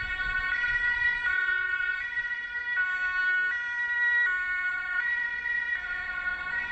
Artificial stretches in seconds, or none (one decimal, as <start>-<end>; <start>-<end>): 0.0-2.6; 4.7-6.7